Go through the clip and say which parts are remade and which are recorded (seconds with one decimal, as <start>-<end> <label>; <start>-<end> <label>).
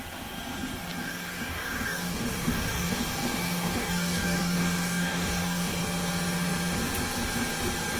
0.0-1.0 recorded; 1.0-5.8 remade; 5.8-8.0 recorded